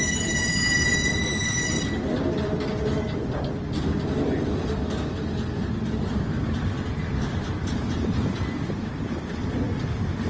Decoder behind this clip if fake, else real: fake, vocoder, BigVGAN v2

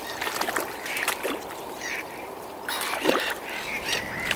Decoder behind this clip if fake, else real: fake, vocoder, BigVGAN v2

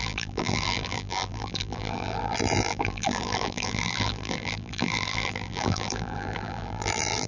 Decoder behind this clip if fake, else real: fake, vocoder, BigVGAN v2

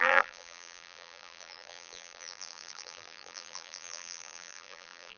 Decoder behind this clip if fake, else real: fake, vocoder, BigVGAN v2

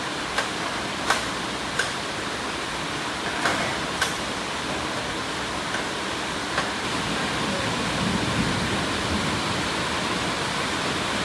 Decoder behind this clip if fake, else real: fake, vocoder, BigVGAN v2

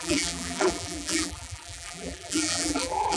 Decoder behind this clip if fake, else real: fake, vocoder, BigVGAN v2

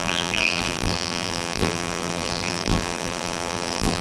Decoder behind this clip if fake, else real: fake, vocoder, BigVGAN v2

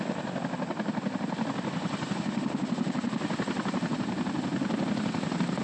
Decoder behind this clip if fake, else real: real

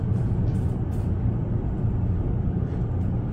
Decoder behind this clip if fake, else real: real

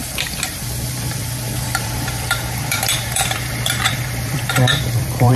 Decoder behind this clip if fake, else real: fake, vocoder, BigVGAN v2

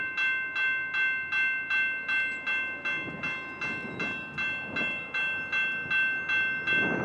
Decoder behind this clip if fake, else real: real